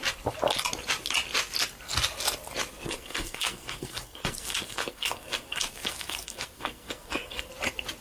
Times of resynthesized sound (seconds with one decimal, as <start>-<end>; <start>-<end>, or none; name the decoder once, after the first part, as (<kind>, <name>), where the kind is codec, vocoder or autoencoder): 2.7-7.5 (codec, SNAC)

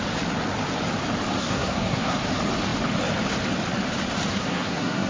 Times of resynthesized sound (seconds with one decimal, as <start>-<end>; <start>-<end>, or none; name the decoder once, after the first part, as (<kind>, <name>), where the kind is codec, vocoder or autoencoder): 1.4-2.3 (codec, SNAC); 4.3-5.1

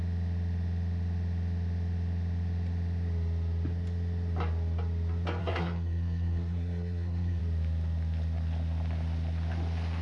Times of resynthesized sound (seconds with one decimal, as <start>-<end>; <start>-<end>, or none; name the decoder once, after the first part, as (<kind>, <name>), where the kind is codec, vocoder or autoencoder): 5.4-7.4 (codec, SNAC)

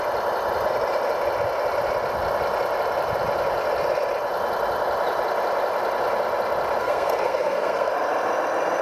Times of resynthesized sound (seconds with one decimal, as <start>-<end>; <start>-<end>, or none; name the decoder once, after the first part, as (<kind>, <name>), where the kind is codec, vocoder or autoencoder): 6.8-7.9 (codec, SNAC)